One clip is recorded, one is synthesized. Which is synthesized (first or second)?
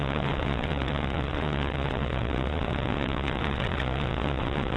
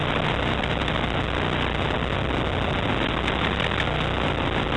first